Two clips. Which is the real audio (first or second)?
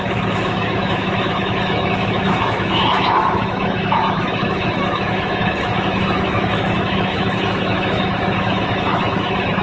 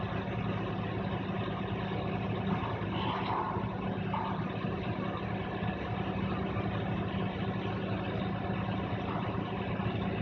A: second